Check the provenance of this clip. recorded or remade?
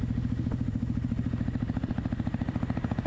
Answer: remade